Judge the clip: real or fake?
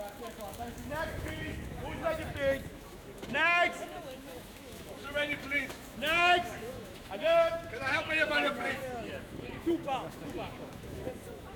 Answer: fake